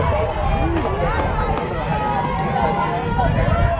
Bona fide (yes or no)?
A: yes